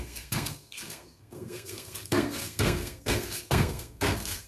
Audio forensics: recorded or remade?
remade